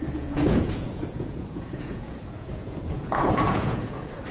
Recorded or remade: remade